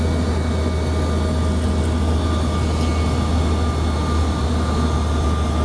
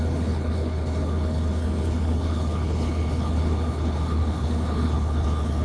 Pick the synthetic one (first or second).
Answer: second